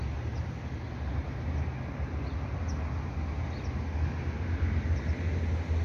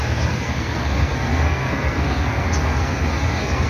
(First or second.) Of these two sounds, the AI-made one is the second